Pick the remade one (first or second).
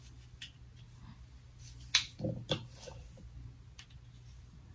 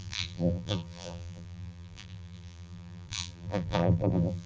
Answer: second